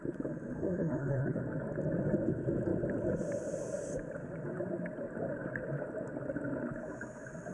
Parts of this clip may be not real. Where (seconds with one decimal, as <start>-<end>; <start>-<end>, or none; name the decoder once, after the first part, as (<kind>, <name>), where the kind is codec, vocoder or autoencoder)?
0.6-1.4 (codec, SNAC)